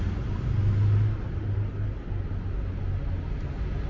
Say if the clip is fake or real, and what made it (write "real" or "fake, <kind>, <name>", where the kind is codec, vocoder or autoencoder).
real